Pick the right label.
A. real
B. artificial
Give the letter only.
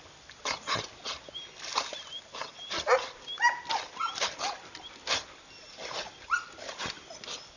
A